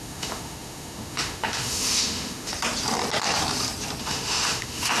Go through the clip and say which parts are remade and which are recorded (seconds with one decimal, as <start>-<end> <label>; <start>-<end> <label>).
0.0-2.5 remade; 2.5-4.0 recorded; 4.0-5.0 remade